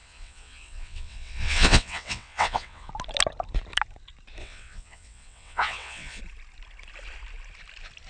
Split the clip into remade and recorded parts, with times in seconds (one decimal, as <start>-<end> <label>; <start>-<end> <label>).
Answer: 0.0-2.9 remade; 2.9-4.4 recorded; 4.4-6.2 remade; 6.2-8.1 recorded